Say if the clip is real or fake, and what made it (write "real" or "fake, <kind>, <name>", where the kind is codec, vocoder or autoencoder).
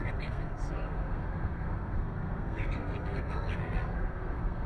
fake, codec, SNAC